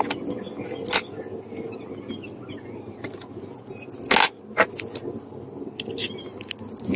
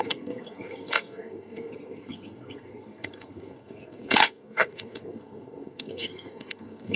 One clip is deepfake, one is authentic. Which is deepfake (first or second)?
second